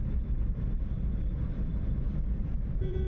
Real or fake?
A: real